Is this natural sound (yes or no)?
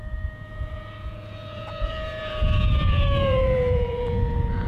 no